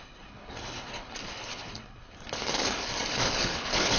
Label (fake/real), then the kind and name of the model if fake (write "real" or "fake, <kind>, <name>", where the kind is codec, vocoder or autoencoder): fake, codec, HILCodec